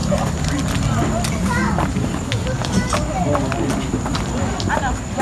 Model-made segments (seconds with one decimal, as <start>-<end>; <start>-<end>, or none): none